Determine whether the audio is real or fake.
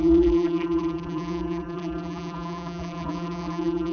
fake